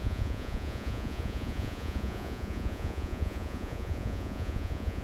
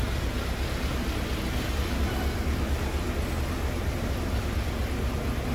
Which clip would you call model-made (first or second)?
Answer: first